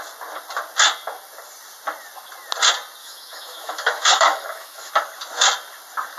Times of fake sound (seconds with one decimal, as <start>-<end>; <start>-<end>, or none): 3.0-4.9